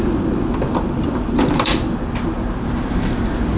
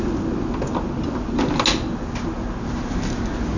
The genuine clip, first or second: second